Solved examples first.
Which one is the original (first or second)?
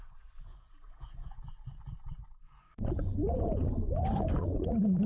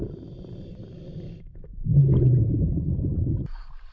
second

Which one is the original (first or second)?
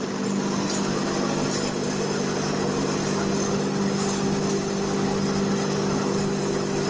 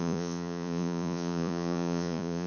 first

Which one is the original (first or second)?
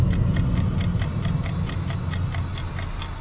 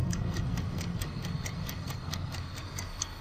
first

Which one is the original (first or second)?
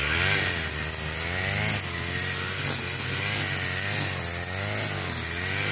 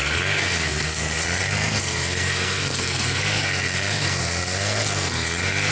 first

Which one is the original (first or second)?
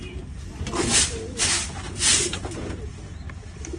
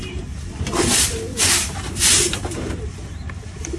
first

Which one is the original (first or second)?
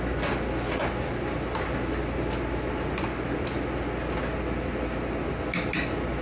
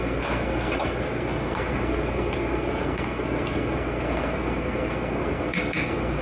first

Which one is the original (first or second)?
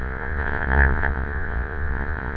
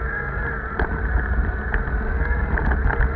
second